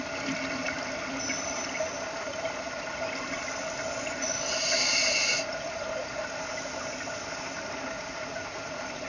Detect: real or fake real